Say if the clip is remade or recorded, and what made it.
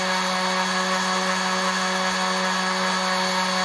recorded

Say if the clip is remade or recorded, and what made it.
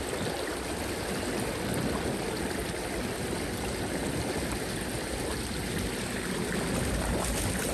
recorded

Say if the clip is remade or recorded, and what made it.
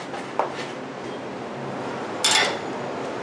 recorded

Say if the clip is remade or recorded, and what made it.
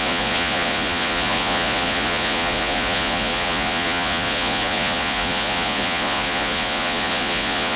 remade, vocoder, Vocos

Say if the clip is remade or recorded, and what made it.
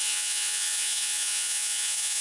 remade, vocoder, Vocos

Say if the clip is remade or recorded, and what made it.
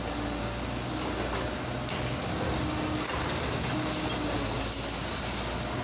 recorded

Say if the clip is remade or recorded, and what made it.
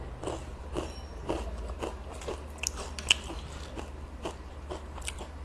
recorded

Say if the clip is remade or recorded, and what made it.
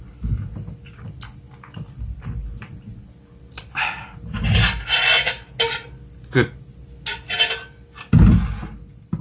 recorded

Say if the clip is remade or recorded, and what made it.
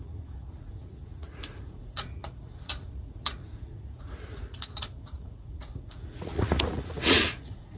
remade, vocoder, Vocos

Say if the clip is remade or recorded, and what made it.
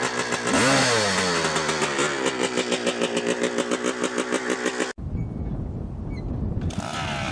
recorded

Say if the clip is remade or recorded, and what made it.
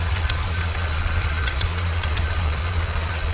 remade, vocoder, Vocos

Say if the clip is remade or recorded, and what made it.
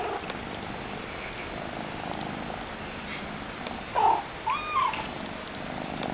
recorded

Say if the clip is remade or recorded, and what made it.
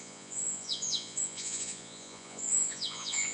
remade, vocoder, Vocos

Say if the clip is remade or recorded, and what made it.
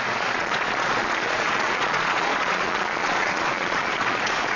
remade, vocoder, Vocos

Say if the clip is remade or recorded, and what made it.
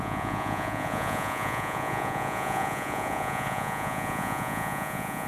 remade, vocoder, Vocos